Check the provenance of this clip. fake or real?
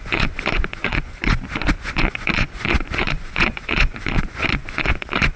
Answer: fake